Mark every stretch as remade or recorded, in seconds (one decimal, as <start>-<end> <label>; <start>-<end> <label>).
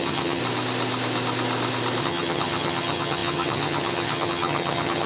0.0-0.4 remade; 0.4-2.0 recorded; 2.0-5.1 remade